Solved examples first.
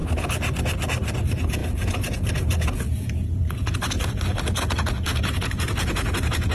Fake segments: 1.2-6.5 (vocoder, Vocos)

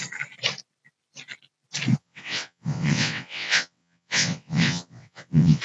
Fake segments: 2.0-5.6 (vocoder, WaveNeXt)